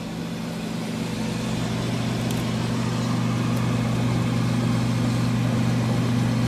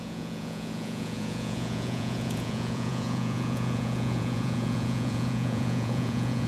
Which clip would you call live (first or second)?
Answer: first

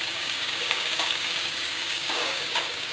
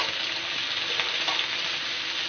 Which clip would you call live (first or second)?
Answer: second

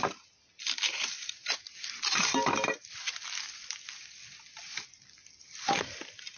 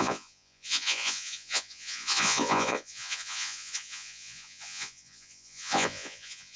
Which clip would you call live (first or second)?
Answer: first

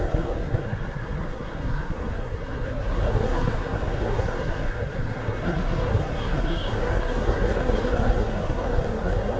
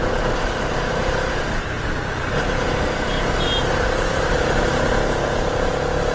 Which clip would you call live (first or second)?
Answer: second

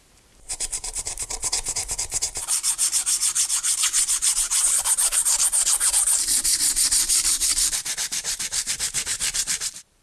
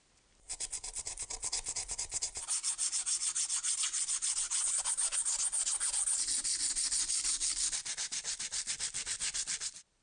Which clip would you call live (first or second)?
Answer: second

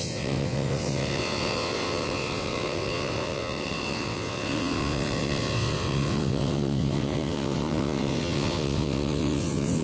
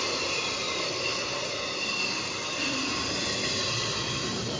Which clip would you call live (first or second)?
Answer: second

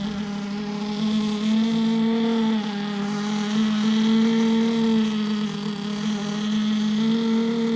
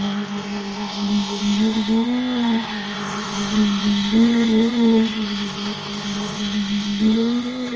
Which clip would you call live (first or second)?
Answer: first